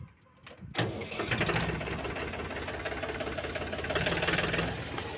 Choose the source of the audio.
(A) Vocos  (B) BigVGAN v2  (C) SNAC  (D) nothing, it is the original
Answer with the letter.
D